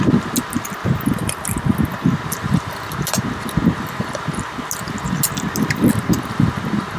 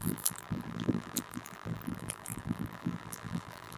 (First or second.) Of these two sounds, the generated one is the second